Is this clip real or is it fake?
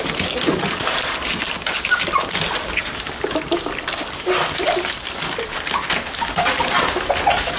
real